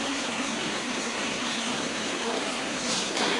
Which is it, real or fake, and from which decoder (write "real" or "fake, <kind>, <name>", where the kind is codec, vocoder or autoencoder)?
fake, codec, SNAC